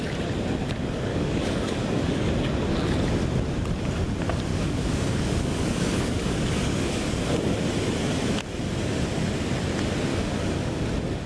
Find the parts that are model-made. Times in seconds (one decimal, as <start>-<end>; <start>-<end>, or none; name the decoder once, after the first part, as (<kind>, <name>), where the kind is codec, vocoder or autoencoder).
1.1-2.3 (codec, DAC); 4.5-7.2; 10.1-10.8